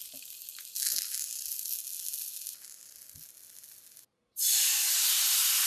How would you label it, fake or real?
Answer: real